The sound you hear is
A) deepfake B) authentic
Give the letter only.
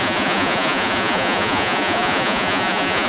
A